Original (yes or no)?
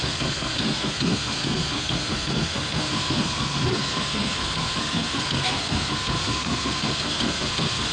no